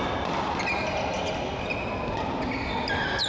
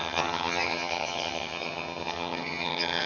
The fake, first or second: second